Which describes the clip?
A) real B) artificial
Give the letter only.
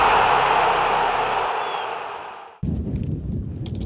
A